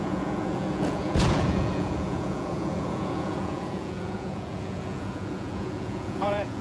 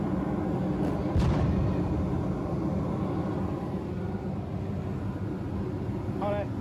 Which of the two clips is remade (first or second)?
first